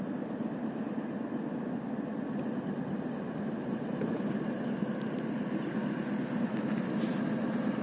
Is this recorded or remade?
recorded